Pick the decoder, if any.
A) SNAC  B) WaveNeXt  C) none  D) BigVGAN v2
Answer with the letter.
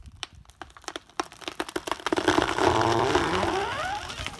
D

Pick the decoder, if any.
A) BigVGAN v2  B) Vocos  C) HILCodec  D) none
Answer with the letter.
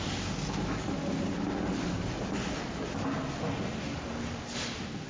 D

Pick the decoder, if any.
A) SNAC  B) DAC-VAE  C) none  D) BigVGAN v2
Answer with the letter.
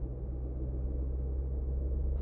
C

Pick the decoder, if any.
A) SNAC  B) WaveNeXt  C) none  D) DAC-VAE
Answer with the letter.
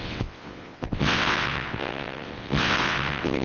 B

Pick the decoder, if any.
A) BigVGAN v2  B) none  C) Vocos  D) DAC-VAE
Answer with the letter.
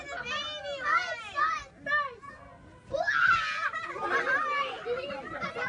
B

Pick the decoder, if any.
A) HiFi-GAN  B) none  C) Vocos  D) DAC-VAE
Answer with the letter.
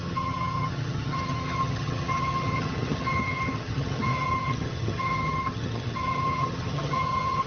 A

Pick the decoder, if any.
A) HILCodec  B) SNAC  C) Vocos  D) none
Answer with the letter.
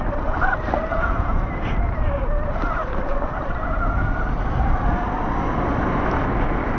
D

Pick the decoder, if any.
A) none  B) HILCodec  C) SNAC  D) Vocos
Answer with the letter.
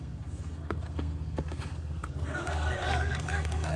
C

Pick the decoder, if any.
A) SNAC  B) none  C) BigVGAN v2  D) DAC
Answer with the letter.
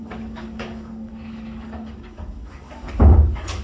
D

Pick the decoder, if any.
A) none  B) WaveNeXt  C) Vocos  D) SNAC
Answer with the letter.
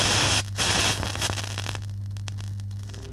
A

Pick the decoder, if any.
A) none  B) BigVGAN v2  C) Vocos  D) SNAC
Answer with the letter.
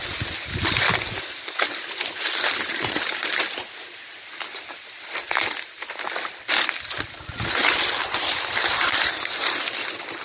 A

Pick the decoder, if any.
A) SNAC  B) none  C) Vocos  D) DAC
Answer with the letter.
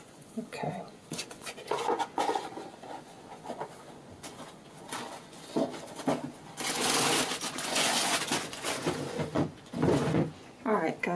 C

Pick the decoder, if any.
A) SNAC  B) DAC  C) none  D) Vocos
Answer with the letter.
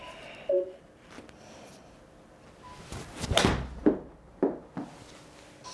C